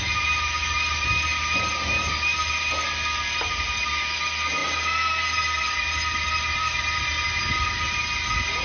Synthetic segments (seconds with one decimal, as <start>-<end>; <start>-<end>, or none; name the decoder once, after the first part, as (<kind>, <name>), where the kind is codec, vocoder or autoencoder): none